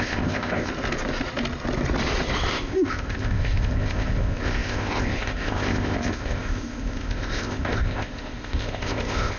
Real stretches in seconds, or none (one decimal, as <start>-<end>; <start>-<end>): 0.7-2.5